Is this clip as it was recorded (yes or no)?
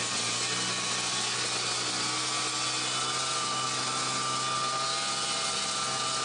yes